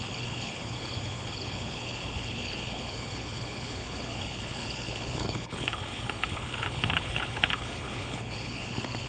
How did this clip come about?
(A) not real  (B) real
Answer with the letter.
A